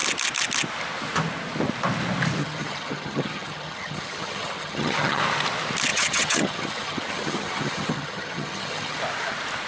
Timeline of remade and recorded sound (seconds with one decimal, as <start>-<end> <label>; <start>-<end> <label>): 0.0-2.4 recorded; 2.4-5.2 remade; 5.2-5.9 recorded; 5.9-9.0 remade; 9.0-9.7 recorded